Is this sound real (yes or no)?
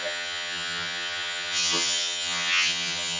no